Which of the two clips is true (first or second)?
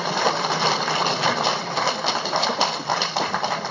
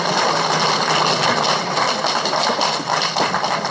second